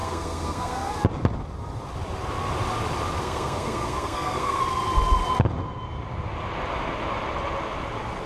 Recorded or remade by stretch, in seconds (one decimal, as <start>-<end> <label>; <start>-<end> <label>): 0.0-0.9 remade; 0.9-3.2 recorded; 3.2-4.6 remade; 4.6-8.3 recorded